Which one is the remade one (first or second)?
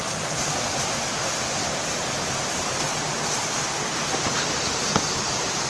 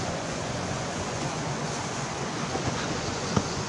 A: second